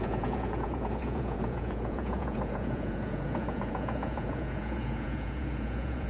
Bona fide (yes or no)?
no